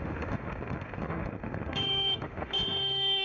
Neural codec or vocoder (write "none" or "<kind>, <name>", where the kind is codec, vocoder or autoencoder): autoencoder, DAC-VAE